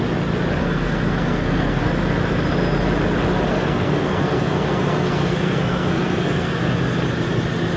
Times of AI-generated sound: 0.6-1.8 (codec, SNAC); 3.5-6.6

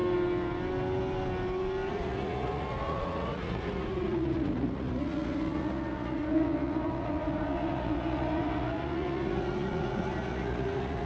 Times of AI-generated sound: 1.9-11.1 (vocoder, Vocos)

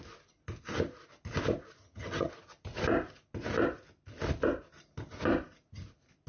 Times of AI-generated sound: 1.8-2.3 (vocoder, HiFi-GAN)

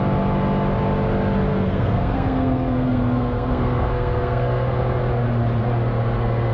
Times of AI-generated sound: 1.5-5.0 (codec, SNAC)

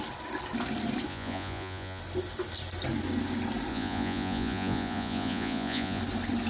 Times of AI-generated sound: 1.1-2.0 (vocoder, Vocos); 3.7-6.0

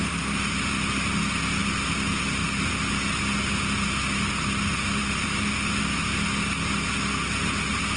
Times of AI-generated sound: 5.0-5.8 (vocoder, BigVGAN v2)

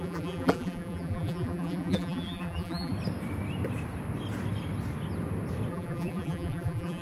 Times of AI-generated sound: 0.0-2.9 (vocoder, BigVGAN v2); 5.7-7.0